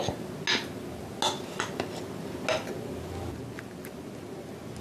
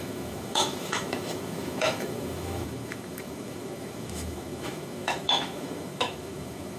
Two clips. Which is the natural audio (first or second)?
first